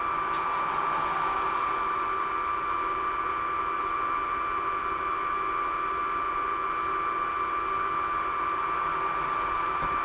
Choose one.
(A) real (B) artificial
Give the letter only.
A